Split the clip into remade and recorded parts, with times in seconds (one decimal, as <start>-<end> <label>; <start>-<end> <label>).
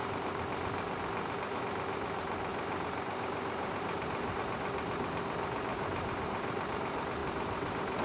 0.0-2.5 recorded; 2.5-4.4 remade; 4.4-5.7 recorded; 5.7-6.7 remade; 6.7-7.2 recorded; 7.2-8.0 remade